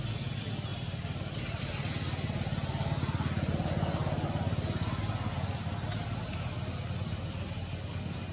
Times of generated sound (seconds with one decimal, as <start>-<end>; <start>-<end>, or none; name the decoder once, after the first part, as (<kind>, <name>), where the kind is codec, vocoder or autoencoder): 0.7-1.6 (vocoder, BigVGAN v2)